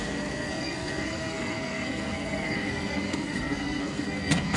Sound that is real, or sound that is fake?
fake